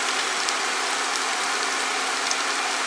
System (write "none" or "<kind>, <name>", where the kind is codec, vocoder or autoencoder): none